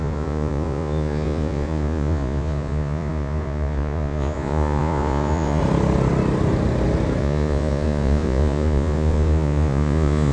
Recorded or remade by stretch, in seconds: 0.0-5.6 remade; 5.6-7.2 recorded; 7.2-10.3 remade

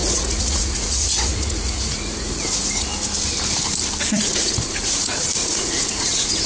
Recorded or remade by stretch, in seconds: 0.0-2.9 remade; 2.9-4.1 recorded; 4.1-6.5 remade

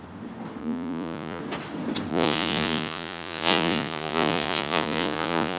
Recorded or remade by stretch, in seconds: 0.0-0.6 recorded; 0.6-1.4 remade; 1.4-2.1 recorded; 2.1-5.6 remade

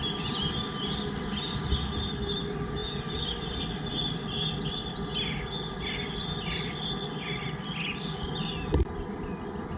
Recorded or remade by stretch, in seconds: 0.0-9.8 recorded

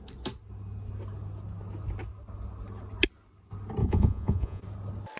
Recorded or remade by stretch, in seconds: 0.0-3.8 recorded; 3.8-4.6 remade; 4.6-5.2 recorded